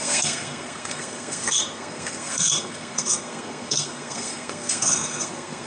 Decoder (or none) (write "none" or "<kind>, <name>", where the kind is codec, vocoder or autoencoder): codec, SNAC